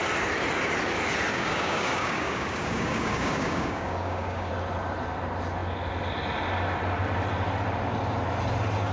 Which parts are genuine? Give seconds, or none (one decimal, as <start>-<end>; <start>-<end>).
0.0-1.3; 4.5-8.9